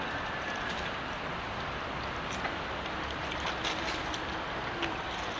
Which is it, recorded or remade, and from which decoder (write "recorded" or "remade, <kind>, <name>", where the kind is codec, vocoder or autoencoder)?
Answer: recorded